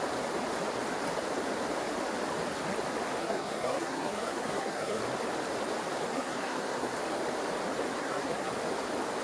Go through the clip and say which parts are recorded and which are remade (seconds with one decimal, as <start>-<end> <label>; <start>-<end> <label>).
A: 0.0-3.2 recorded; 3.2-5.0 remade; 5.0-6.1 recorded; 6.1-6.9 remade; 6.9-8.0 recorded; 8.0-8.5 remade; 8.5-9.2 recorded